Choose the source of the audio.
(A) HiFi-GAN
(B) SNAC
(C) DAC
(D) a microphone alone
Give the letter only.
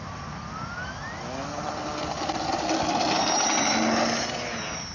D